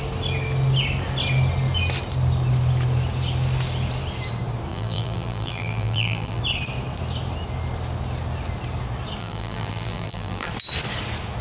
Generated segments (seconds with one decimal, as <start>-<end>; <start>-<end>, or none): 4.7-6.4; 9.2-10.5